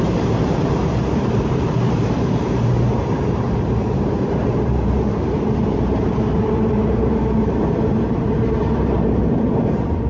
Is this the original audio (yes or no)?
no